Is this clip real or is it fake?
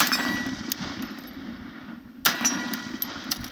real